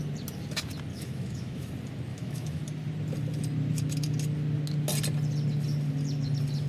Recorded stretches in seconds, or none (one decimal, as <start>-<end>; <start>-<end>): 0.0-0.9; 1.7-2.1; 2.6-6.7